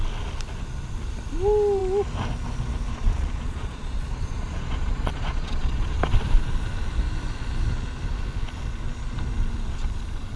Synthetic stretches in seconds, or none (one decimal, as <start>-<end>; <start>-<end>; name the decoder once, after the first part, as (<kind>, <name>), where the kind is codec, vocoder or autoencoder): 2.9-6.0 (vocoder, Vocos)